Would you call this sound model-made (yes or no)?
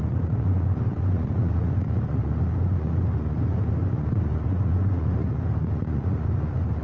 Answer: yes